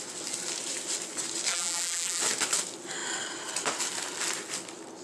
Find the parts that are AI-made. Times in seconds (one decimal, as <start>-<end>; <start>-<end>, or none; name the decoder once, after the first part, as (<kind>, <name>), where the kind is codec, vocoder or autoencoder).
1.5-2.2 (vocoder, BigVGAN v2)